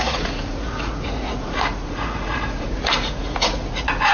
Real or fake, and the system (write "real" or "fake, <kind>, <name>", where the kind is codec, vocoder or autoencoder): fake, vocoder, Vocos